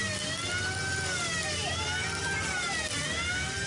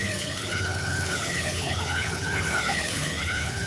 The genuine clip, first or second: first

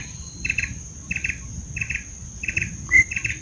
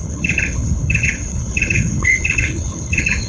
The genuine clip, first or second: first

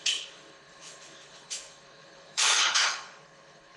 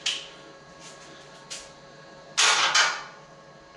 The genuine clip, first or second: second